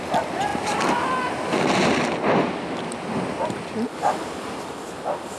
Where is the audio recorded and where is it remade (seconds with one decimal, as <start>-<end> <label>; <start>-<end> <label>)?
0.0-5.4 recorded